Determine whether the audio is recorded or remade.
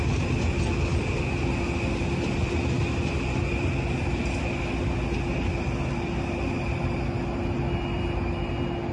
recorded